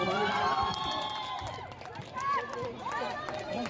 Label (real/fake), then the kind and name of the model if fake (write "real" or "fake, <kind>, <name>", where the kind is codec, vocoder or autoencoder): fake, vocoder, BigVGAN v2